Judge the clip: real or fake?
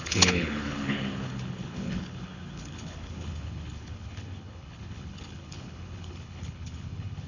fake